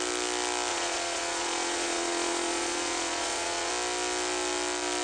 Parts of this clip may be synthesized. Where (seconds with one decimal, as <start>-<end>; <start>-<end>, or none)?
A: 0.7-3.7